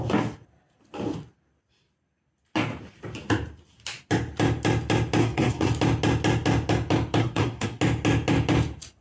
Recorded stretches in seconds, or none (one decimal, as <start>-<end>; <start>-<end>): 0.0-5.2; 5.7-7.2; 7.8-9.0